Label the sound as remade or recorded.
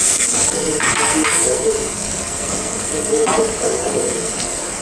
remade